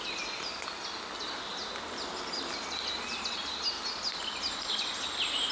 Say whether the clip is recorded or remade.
recorded